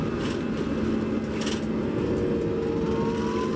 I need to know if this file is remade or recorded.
recorded